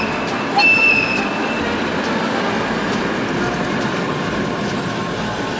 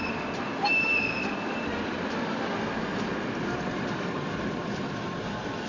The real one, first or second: first